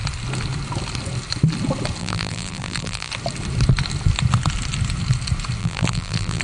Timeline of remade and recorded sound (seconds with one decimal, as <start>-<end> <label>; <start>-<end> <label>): 0.0-2.0 recorded; 2.0-3.1 remade; 3.1-5.6 recorded; 5.6-6.4 remade